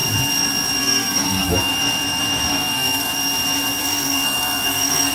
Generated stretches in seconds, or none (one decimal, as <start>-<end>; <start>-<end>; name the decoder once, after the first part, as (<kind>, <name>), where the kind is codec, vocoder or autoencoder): 0.8-1.7 (codec, SNAC); 2.5-3.1; 3.8-5.1